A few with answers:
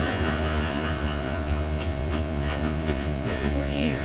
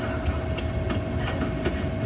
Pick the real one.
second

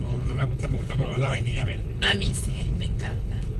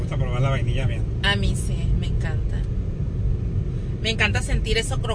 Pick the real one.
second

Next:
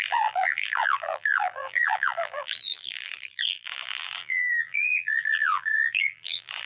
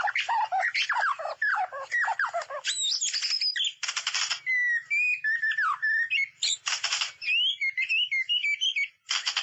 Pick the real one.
second